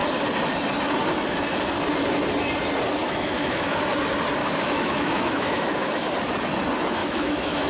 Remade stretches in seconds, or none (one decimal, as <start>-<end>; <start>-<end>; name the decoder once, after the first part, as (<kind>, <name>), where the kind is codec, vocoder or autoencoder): 3.0-3.8 (autoencoder, DAC-VAE); 4.4-6.1; 7.0-7.7